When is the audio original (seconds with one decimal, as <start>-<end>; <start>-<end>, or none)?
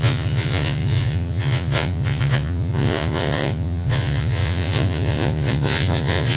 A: none